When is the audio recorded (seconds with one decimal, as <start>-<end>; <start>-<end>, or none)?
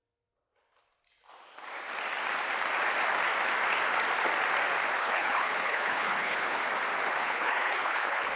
0.0-5.0; 6.6-7.2